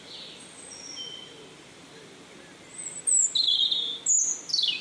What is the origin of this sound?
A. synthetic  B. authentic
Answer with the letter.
B